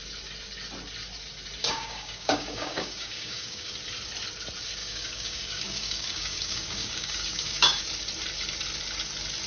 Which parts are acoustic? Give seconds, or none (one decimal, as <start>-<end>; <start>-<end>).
0.0-1.6; 3.7-4.8; 7.8-9.5